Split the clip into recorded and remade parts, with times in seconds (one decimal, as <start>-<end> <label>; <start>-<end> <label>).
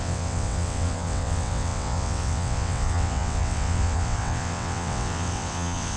0.0-6.0 remade